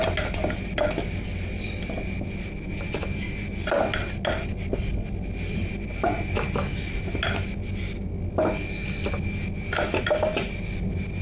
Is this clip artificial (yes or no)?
no